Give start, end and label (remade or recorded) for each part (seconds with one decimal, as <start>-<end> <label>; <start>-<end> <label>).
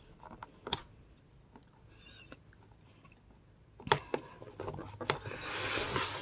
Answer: 0.0-6.2 recorded